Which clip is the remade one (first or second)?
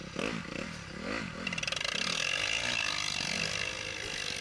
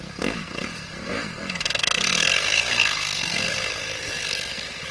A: second